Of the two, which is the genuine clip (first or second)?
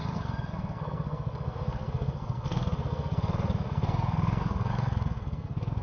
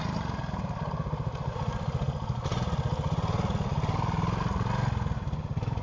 second